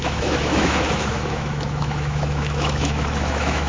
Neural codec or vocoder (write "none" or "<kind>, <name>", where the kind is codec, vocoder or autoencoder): autoencoder, DAC-VAE